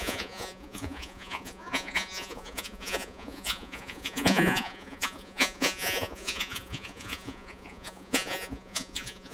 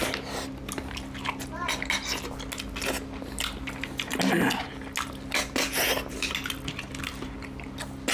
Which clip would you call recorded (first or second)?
second